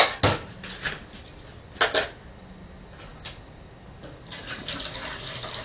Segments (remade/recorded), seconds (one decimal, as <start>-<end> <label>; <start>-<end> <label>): 0.0-3.1 recorded; 3.1-4.0 remade; 4.0-5.6 recorded